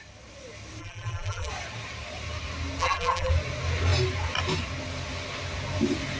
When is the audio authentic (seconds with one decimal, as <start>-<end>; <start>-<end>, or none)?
0.0-0.8; 1.5-2.8; 3.3-6.2